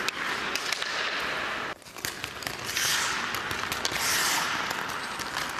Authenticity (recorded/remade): recorded